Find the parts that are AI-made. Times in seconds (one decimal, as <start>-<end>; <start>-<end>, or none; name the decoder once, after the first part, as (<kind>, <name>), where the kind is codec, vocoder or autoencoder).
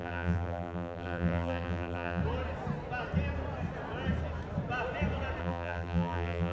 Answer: 0.0-2.2 (vocoder, BigVGAN v2); 5.4-6.5